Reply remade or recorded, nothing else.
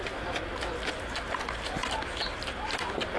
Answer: recorded